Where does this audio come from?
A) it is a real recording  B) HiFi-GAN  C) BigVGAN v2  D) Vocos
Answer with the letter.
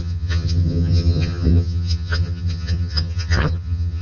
B